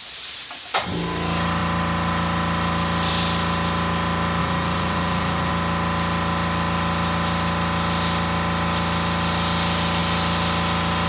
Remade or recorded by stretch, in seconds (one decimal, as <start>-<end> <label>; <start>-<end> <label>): 0.0-4.4 recorded; 4.4-5.5 remade; 5.5-11.1 recorded

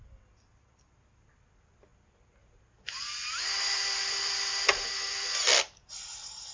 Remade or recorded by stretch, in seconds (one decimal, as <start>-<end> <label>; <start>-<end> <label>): 0.0-6.5 recorded

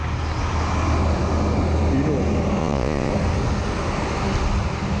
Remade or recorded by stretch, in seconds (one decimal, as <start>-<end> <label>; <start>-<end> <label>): 0.0-2.6 recorded; 2.6-3.1 remade; 3.1-5.0 recorded

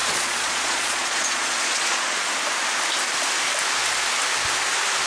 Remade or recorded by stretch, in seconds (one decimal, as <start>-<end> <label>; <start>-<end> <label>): 0.0-2.3 remade; 2.3-5.1 recorded

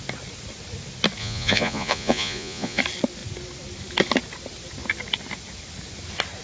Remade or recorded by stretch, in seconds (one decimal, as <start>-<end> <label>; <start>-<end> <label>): 0.0-1.2 recorded; 1.2-2.8 remade; 2.8-6.4 recorded